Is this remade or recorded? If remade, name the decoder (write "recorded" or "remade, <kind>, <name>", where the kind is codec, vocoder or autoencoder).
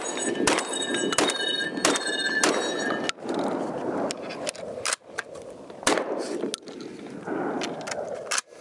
recorded